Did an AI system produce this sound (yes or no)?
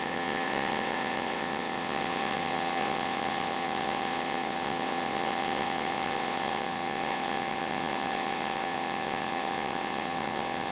yes